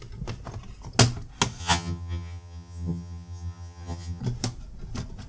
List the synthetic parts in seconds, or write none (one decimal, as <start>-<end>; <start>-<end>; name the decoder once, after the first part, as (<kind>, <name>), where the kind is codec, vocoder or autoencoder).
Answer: 1.6-4.2 (vocoder, HiFi-GAN)